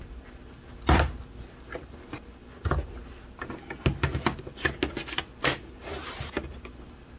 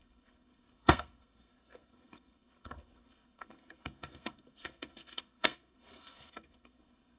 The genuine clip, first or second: first